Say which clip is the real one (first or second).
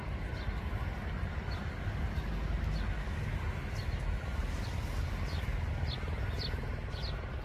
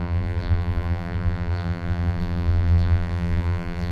first